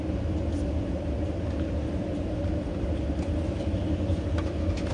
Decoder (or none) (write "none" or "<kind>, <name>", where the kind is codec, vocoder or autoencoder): none